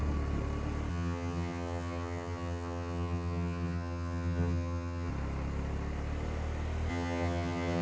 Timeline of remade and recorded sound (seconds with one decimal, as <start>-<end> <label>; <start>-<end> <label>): 0.0-0.9 recorded; 0.9-5.1 remade; 5.1-6.9 recorded; 6.9-7.8 remade